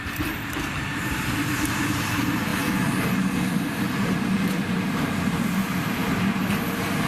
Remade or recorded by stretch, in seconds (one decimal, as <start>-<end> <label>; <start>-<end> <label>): 0.0-2.5 remade; 2.5-3.6 recorded; 3.6-7.1 remade